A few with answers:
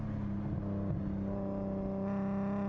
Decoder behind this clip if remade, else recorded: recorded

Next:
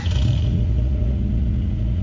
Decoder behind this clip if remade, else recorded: remade, vocoder, Vocos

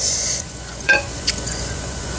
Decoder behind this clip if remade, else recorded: remade, vocoder, Vocos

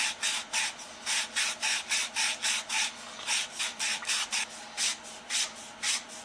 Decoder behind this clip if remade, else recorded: recorded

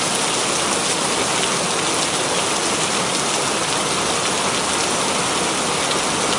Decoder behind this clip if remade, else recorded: recorded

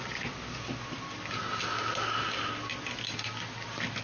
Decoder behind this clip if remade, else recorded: recorded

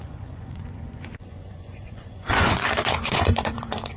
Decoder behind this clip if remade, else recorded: remade, vocoder, Vocos